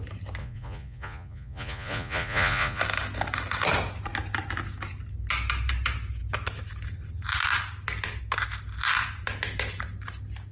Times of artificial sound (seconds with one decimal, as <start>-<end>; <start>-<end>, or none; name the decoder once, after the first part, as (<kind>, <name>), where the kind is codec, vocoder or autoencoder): 0.4-2.8 (vocoder, Vocos)